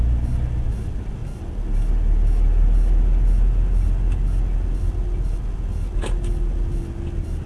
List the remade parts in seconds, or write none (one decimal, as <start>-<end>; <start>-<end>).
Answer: none